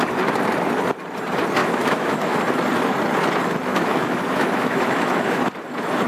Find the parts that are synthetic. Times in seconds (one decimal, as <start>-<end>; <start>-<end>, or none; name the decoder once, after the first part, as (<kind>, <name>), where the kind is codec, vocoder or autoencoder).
1.6-2.4 (autoencoder, DAC-VAE); 3.7-5.4